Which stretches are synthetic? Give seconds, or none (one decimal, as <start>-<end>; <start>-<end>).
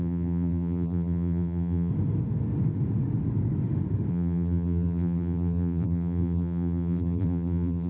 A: 0.0-1.9; 4.1-7.9